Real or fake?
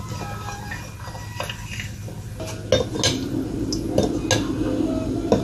real